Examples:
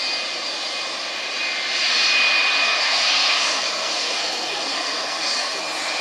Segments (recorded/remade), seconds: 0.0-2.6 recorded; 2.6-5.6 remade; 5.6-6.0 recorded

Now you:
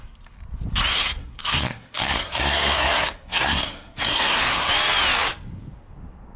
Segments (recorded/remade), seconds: 0.0-0.9 recorded; 0.9-4.7 remade; 4.7-6.4 recorded

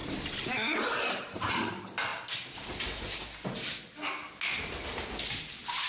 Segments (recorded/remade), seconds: 0.0-5.9 recorded

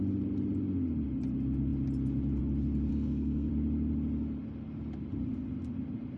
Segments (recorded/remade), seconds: 0.0-2.9 recorded; 2.9-3.5 remade; 3.5-6.2 recorded

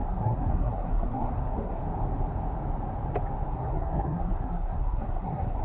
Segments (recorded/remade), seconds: 0.0-1.8 remade; 1.8-3.5 recorded; 3.5-5.6 remade

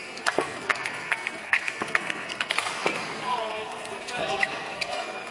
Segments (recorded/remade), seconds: 0.0-5.3 remade

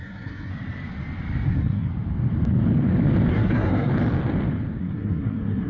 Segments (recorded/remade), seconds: 0.0-0.5 remade; 0.5-1.5 recorded; 1.5-1.9 remade; 1.9-3.3 recorded; 3.3-3.9 remade; 3.9-4.8 recorded; 4.8-5.7 remade

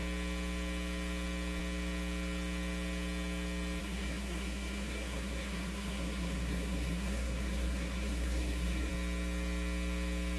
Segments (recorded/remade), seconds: 0.0-3.8 recorded; 3.8-8.9 remade; 8.9-10.4 recorded